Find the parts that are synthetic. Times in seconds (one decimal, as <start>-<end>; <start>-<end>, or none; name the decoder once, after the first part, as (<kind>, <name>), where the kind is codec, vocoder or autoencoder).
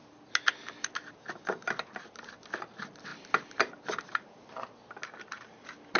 none